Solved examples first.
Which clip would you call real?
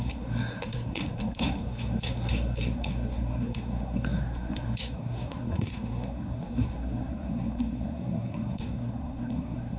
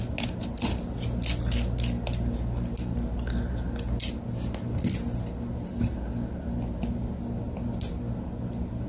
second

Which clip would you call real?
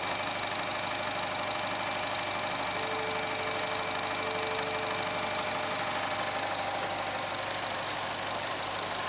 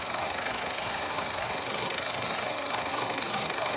first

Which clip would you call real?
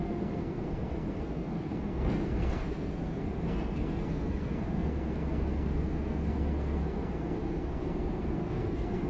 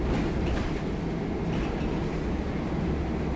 second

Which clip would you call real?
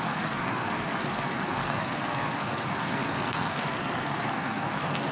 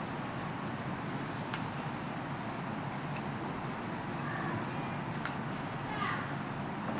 second